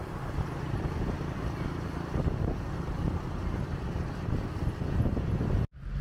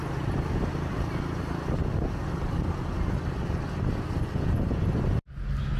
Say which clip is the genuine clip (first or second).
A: second